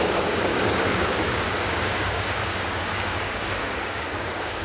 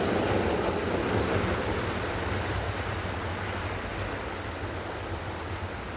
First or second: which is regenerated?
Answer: first